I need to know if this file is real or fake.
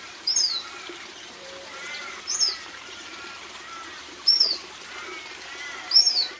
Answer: fake